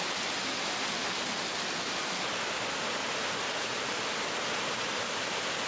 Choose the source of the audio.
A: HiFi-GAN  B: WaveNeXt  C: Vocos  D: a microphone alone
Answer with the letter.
D